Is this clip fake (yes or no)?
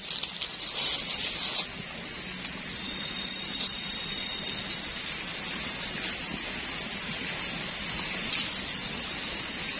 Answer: no